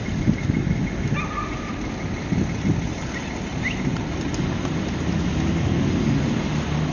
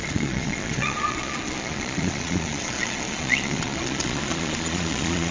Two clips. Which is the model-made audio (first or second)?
second